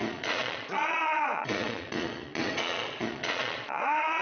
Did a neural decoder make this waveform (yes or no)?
yes